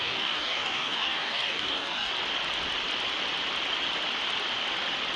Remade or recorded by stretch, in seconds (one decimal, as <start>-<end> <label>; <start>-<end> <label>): 0.0-2.1 remade; 2.1-5.2 recorded